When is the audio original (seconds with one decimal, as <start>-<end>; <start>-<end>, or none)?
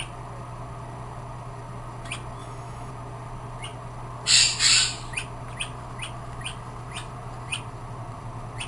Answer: 0.0-2.4; 2.9-8.7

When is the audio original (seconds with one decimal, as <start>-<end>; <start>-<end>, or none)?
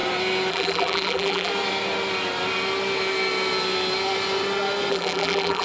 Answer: 0.0-0.5; 1.5-4.9